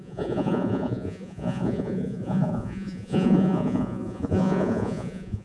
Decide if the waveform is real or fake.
fake